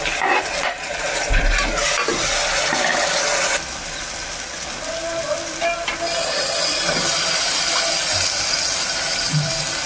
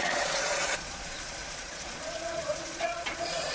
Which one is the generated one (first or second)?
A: second